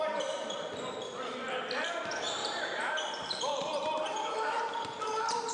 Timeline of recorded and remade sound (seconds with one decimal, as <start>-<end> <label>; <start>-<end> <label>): 0.0-2.4 recorded; 2.4-5.5 remade